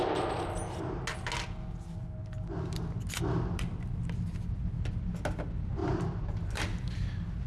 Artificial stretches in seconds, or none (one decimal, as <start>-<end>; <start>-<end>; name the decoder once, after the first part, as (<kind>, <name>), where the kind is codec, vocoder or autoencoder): 5.8-7.5 (vocoder, BigVGAN v2)